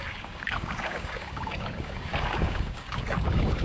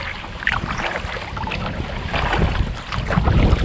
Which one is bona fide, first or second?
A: second